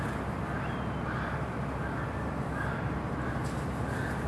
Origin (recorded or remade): recorded